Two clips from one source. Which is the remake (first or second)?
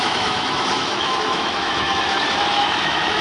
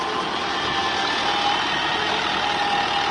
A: first